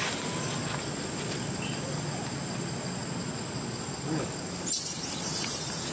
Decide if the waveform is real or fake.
real